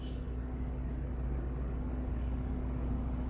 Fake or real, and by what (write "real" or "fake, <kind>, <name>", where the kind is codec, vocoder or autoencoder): fake, codec, DAC